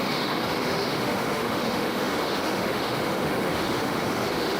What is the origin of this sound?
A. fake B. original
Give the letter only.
A